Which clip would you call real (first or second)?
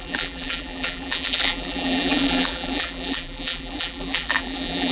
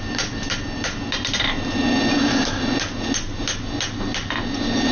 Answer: second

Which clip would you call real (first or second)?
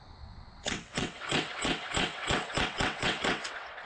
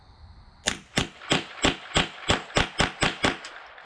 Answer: second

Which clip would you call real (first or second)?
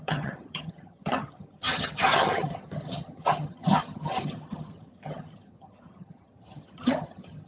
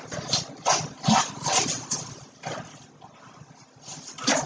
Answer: second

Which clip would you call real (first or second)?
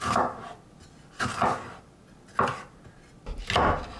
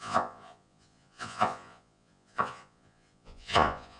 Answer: first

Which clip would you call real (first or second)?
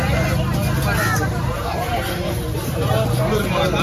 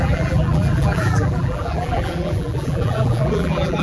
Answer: first